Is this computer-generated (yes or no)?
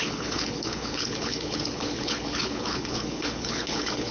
yes